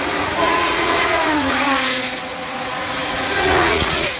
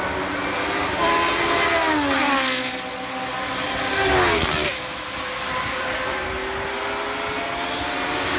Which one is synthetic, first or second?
first